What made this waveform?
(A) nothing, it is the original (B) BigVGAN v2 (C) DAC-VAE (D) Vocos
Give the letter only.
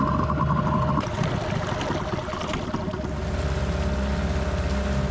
A